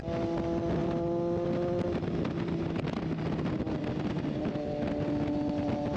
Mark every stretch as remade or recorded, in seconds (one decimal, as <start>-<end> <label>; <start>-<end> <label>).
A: 0.0-6.0 recorded